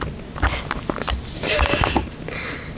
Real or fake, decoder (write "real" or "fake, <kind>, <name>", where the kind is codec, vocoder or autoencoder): real